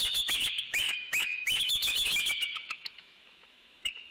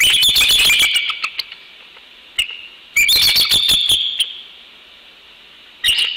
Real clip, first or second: second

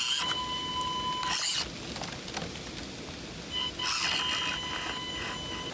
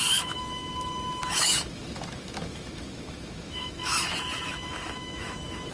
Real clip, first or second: first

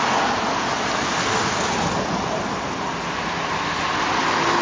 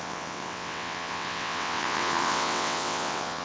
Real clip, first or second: first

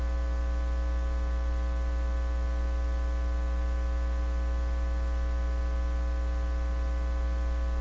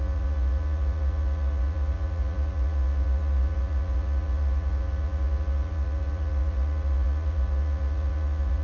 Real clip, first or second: first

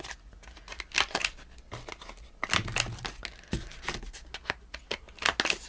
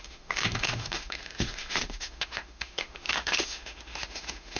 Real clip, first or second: first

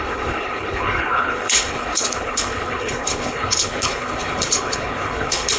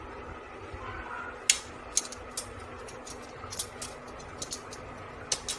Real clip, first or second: second